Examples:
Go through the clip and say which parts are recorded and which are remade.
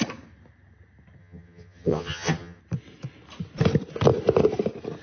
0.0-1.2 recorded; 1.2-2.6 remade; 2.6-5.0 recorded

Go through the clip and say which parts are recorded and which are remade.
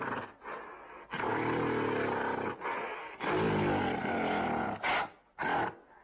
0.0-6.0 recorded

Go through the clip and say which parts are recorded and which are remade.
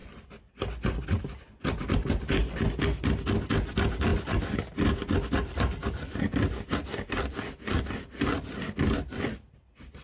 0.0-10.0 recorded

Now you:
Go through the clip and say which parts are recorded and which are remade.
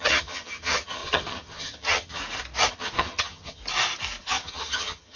0.0-2.2 remade; 2.2-2.7 recorded; 2.7-3.6 remade; 3.6-4.2 recorded; 4.2-5.2 remade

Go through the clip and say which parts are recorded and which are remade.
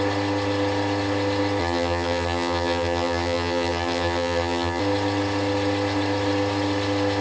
0.0-1.6 recorded; 1.6-4.8 remade; 4.8-7.2 recorded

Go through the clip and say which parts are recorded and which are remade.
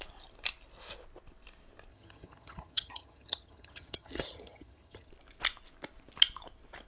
0.0-1.9 recorded; 1.9-5.1 remade; 5.1-6.9 recorded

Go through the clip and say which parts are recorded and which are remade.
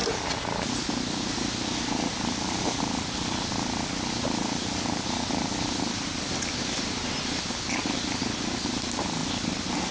0.0-9.9 recorded